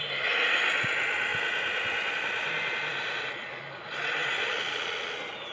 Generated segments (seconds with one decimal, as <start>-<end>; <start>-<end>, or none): none

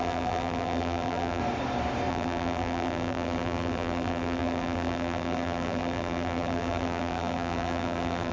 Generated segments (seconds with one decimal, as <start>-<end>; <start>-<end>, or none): 0.0-1.4; 2.1-8.3

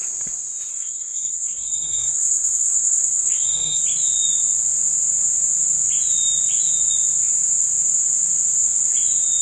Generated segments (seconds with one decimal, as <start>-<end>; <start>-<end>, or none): 0.7-3.8

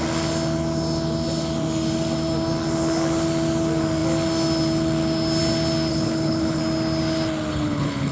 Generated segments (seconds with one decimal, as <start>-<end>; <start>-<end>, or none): 5.9-6.6; 7.5-8.1

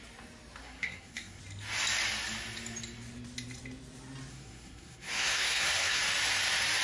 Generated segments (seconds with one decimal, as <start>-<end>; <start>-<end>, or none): 0.6-1.4; 4.3-6.0

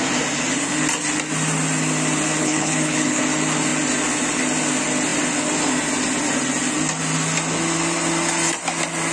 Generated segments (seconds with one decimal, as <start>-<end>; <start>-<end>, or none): 2.4-3.2